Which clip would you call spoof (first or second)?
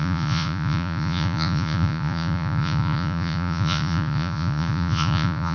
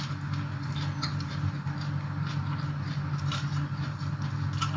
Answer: first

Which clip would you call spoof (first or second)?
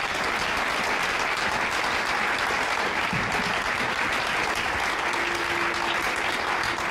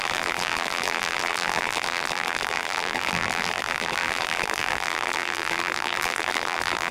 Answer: second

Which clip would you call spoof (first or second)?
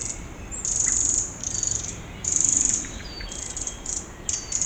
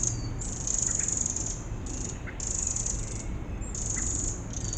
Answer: first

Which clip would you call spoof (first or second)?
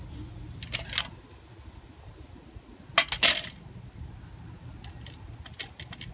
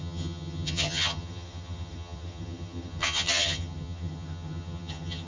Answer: second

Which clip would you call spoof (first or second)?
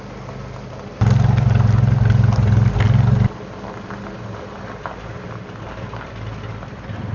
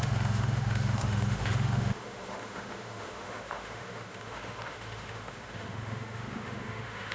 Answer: second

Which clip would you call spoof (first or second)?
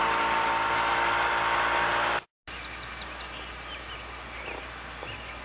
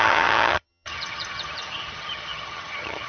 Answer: second